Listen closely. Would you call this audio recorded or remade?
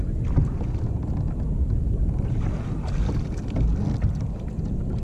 recorded